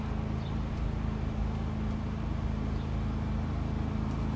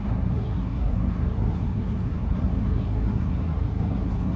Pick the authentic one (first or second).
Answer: first